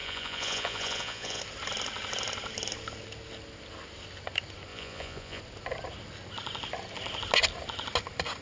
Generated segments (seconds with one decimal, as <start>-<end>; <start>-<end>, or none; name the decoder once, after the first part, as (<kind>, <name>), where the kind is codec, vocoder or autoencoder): 0.0-1.4 (vocoder, Vocos); 4.7-5.4